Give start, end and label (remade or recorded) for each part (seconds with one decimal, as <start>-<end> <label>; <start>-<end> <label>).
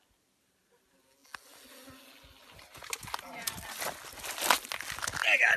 0.0-5.6 recorded